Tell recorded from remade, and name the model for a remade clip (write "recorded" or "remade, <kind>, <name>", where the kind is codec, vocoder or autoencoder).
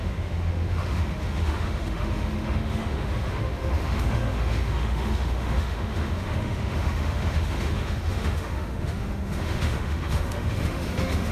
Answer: remade, autoencoder, DAC-VAE